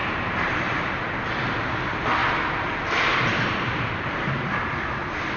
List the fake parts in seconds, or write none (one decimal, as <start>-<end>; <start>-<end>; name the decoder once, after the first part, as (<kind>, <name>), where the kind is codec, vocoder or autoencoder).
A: 0.0-0.5 (vocoder, BigVGAN v2); 3.3-4.5